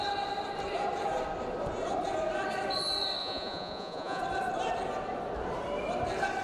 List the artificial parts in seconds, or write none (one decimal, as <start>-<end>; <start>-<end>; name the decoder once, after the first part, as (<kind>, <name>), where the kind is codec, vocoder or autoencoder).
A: 3.2-4.2 (vocoder, Vocos)